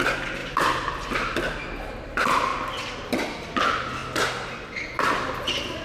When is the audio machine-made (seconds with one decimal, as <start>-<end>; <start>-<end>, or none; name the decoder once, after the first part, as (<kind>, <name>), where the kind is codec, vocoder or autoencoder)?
0.4-2.0 (vocoder, BigVGAN v2)